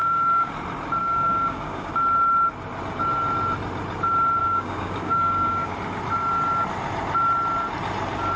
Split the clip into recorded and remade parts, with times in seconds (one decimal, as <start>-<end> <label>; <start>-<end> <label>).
0.0-0.5 remade; 0.5-1.0 recorded; 1.0-1.9 remade; 1.9-4.4 recorded; 4.4-5.7 remade; 5.7-8.4 recorded